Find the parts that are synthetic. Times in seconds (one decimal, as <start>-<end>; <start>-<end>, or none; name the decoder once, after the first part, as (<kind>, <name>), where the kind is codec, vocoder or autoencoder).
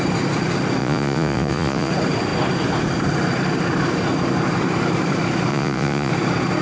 0.8-1.9 (vocoder, Vocos); 5.5-6.1